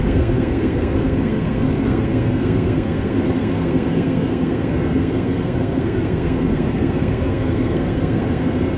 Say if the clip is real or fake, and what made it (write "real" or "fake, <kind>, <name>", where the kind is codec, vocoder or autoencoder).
fake, codec, SNAC